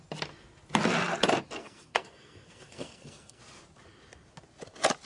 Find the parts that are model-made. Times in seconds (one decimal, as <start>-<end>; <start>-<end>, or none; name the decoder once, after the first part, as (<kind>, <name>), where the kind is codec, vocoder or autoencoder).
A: 1.6-3.4 (codec, SNAC)